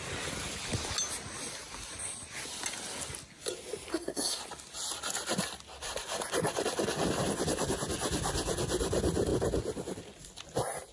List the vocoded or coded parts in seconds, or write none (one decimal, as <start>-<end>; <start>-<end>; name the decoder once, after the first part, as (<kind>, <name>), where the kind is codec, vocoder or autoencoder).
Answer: 3.9-4.4 (codec, SNAC)